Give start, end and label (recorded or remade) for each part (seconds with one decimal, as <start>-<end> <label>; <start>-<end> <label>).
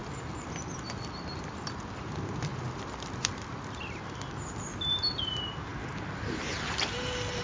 0.0-1.4 remade; 1.4-2.5 recorded; 2.5-5.2 remade; 5.2-7.4 recorded